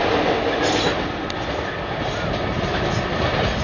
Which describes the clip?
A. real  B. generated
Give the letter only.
A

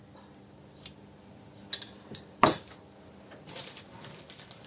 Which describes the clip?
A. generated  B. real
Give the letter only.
B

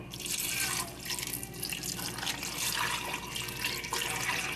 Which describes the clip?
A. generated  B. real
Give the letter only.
B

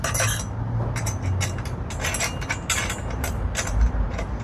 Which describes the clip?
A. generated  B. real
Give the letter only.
B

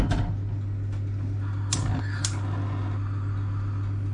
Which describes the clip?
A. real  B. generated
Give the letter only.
A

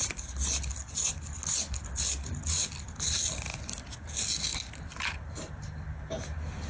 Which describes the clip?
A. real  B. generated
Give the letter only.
A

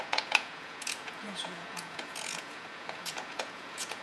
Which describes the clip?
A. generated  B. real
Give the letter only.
A